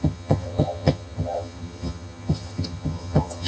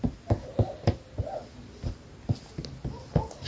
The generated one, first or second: first